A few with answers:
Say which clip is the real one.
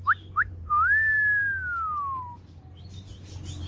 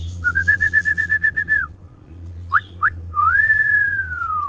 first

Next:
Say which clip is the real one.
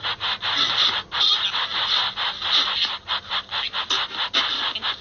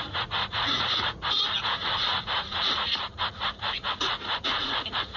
first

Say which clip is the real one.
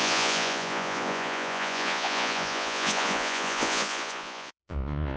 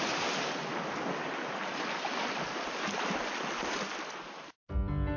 second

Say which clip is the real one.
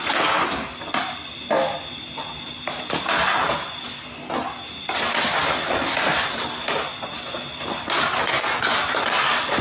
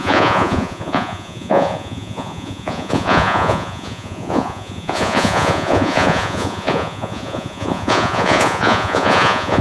first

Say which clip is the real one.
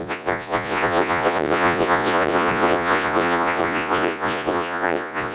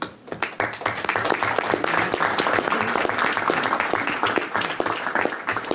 second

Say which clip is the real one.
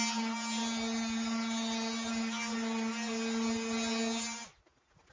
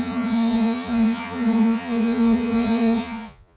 first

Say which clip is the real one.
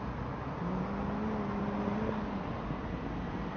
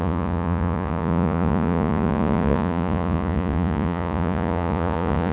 first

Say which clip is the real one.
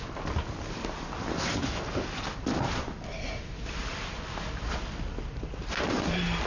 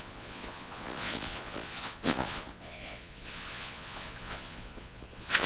first